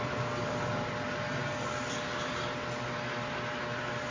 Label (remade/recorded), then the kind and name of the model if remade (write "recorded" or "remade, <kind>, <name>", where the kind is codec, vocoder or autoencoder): recorded